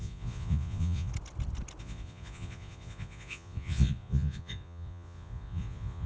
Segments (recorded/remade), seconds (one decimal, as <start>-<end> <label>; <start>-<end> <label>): 0.0-1.1 remade; 1.1-1.8 recorded; 1.8-6.1 remade